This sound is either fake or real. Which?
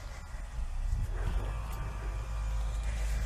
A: real